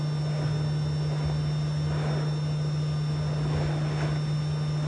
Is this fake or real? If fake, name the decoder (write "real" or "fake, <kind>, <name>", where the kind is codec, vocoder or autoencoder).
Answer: real